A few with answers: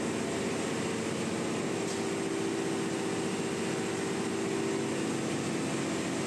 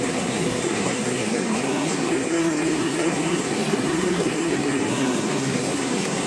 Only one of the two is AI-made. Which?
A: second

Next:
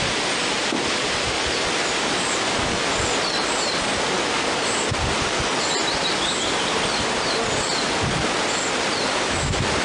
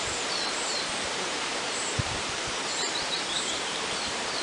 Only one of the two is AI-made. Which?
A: second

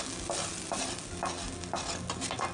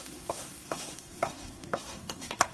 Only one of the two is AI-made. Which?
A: second